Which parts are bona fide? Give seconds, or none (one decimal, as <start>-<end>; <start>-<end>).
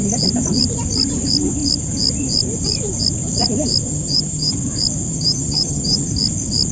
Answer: 0.0-3.9; 4.5-5.1; 6.1-6.7